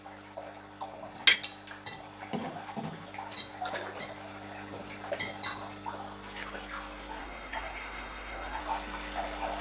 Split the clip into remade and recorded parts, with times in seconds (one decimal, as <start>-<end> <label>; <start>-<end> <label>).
0.0-7.2 recorded; 7.2-8.6 remade; 8.6-9.6 recorded